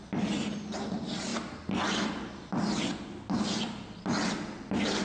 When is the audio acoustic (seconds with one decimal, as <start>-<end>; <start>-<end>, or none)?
0.0-5.0